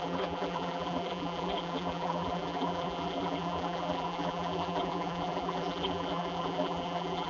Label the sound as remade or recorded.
remade